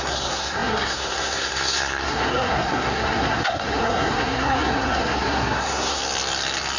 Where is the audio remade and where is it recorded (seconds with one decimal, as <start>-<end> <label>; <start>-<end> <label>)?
0.0-6.0 remade; 6.0-6.8 recorded